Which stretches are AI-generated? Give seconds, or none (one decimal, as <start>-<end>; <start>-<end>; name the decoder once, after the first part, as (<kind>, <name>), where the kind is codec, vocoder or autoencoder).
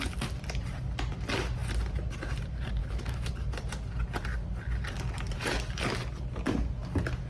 2.8-3.3 (autoencoder, DAC-VAE)